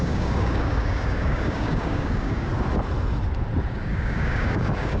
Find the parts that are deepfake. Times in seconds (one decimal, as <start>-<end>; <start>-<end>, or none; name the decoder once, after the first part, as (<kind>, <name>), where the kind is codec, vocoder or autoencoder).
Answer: 0.0-2.5 (codec, DAC); 3.7-5.0